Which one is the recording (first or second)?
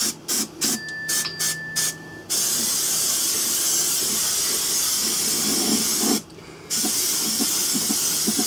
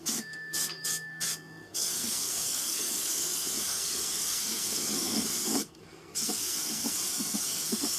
first